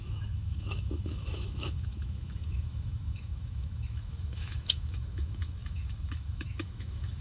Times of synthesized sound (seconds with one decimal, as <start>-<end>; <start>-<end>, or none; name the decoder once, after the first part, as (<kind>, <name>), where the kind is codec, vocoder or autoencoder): 0.0-7.2 (autoencoder, DAC-VAE)